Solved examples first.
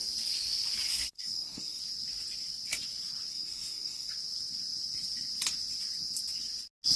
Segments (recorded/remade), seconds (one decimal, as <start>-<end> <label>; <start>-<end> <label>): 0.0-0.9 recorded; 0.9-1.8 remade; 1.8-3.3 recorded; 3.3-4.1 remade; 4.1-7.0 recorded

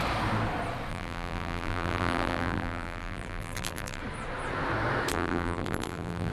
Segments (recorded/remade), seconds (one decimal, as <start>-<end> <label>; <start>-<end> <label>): 0.0-0.9 recorded; 0.9-4.0 remade; 4.0-5.1 recorded; 5.1-6.3 remade

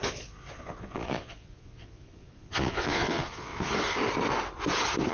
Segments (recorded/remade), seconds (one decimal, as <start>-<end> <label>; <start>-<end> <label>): 0.0-3.5 remade; 3.5-5.1 recorded